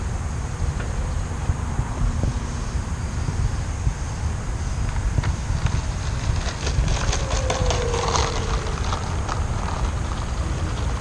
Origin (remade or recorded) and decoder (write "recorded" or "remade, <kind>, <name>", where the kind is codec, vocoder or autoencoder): remade, vocoder, BigVGAN v2